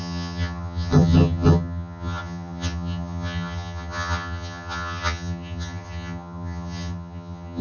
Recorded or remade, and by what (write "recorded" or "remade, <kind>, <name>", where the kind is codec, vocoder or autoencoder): remade, vocoder, HiFi-GAN